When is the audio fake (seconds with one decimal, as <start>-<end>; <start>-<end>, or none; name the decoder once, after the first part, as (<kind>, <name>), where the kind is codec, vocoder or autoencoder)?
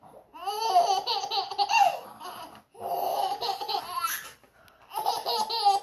1.9-2.4 (codec, DAC); 3.1-3.8